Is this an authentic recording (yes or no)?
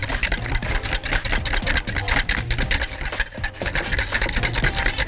yes